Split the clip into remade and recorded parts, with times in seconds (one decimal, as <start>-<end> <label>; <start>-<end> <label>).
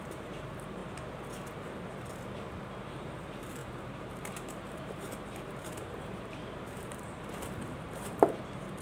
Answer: 0.0-0.8 remade; 0.8-2.6 recorded; 2.6-3.6 remade; 3.6-4.1 recorded; 4.1-8.8 remade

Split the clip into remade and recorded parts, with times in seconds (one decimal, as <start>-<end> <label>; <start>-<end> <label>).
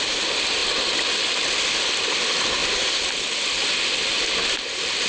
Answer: 0.0-0.6 recorded; 0.6-1.3 remade; 1.3-2.6 recorded; 2.6-5.1 remade